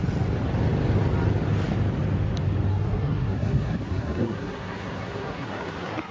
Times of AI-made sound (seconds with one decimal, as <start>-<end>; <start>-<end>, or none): 2.7-6.1